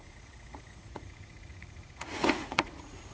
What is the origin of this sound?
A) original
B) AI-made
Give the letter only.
B